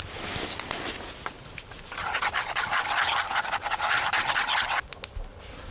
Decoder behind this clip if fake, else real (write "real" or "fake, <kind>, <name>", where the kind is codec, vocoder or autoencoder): real